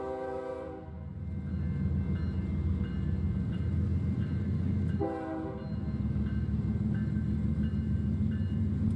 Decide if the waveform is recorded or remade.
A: recorded